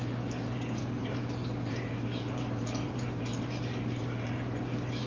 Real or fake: fake